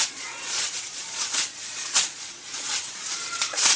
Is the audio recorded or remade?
remade